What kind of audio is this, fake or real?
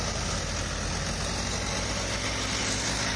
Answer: real